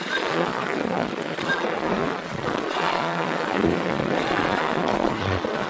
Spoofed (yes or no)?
yes